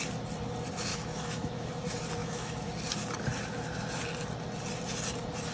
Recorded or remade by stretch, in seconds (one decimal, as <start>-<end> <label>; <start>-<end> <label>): 0.0-0.9 recorded; 0.9-1.7 remade; 1.7-2.2 recorded; 2.2-2.7 remade; 2.7-5.5 recorded